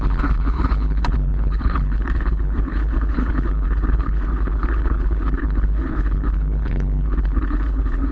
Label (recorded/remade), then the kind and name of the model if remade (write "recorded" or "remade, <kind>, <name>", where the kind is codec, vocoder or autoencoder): remade, codec, HILCodec